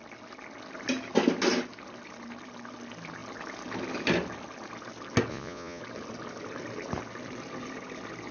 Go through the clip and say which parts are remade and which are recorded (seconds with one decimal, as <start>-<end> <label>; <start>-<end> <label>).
0.0-5.3 recorded; 5.3-5.8 remade; 5.8-8.3 recorded

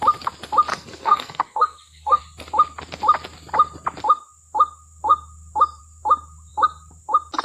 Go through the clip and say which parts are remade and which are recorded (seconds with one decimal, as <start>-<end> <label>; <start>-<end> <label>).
0.0-0.7 recorded; 0.7-2.2 remade; 2.2-7.4 recorded